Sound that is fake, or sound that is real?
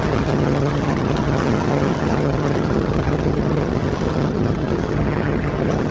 fake